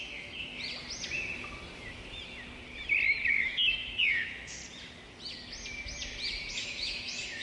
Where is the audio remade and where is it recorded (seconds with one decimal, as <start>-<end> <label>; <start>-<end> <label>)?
0.0-0.5 remade; 0.5-3.3 recorded; 3.3-4.6 remade; 4.6-6.5 recorded; 6.5-7.4 remade